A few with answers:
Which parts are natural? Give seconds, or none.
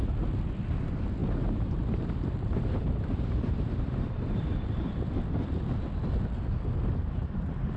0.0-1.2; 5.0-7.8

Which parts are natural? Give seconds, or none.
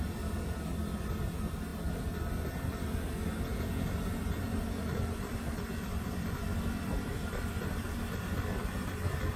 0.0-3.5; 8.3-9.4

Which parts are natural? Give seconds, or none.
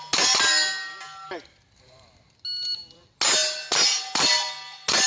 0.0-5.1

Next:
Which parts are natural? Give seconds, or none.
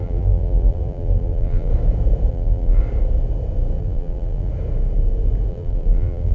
1.7-2.3; 2.8-3.8; 4.5-5.5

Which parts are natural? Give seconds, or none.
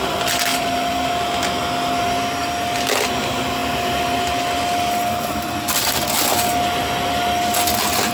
0.0-0.5; 1.1-8.1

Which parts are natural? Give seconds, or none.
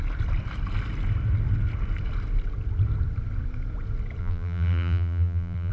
0.0-4.2